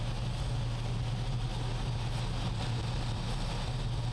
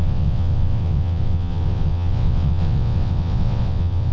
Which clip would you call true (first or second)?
first